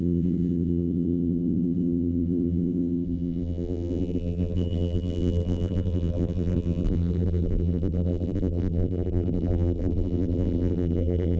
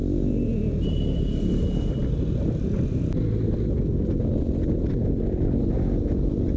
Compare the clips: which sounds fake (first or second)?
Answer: first